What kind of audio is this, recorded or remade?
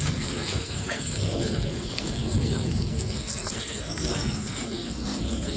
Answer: remade